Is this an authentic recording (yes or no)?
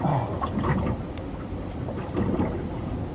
yes